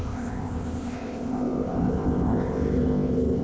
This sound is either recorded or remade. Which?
remade